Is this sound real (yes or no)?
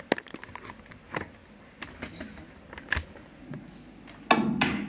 yes